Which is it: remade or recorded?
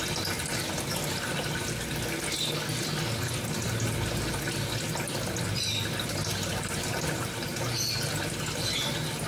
recorded